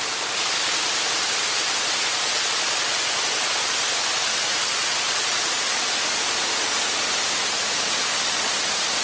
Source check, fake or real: real